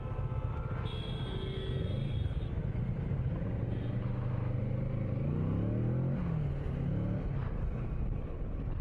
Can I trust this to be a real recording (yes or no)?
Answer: yes